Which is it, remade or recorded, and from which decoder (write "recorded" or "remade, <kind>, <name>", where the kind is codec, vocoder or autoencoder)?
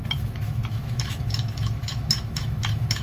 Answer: remade, autoencoder, DAC-VAE